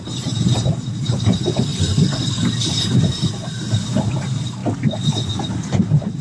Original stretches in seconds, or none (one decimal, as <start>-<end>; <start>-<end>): 1.7-2.2; 4.6-5.4